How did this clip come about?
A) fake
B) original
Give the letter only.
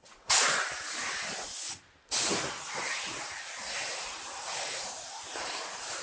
B